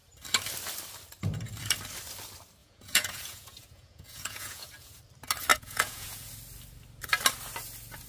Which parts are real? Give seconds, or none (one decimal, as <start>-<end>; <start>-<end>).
0.0-2.6; 5.0-5.5; 6.3-8.1